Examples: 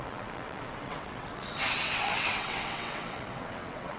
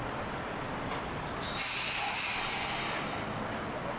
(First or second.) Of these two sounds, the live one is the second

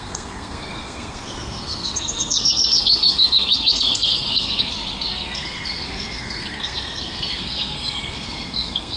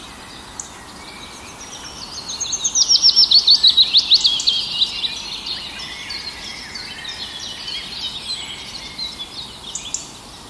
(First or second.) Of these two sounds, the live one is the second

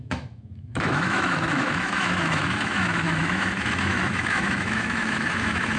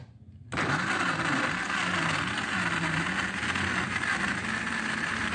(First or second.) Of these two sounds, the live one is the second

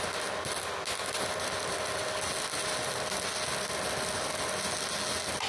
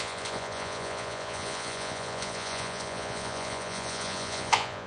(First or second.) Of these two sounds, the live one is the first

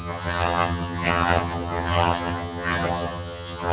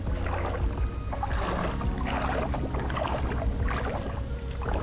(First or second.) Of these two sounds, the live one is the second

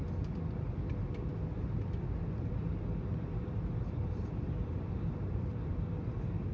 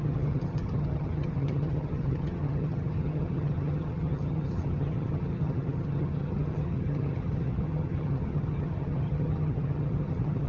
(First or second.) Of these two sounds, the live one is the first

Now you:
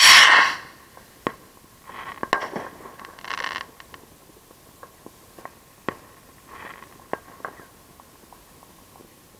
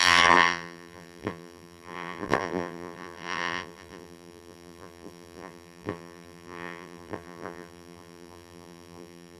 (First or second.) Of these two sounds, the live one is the first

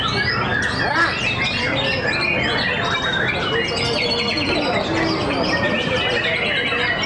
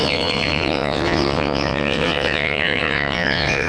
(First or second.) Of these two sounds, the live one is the first